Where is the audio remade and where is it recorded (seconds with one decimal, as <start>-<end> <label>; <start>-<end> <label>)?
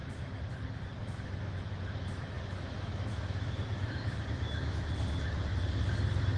0.0-0.5 remade; 0.5-1.0 recorded; 1.0-4.8 remade; 4.8-6.4 recorded